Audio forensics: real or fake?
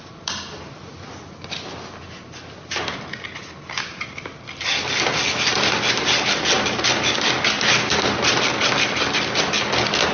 real